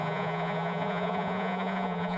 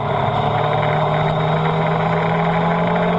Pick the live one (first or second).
second